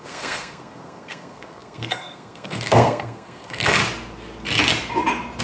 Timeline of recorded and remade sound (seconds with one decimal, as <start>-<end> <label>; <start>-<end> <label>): 0.0-3.8 remade; 3.8-5.4 recorded